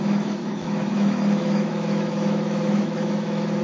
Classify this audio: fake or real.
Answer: fake